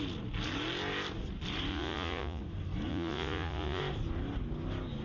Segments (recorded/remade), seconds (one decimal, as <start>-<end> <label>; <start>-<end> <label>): 0.0-1.7 recorded; 1.7-2.4 remade; 2.4-2.9 recorded; 2.9-3.8 remade; 3.8-5.0 recorded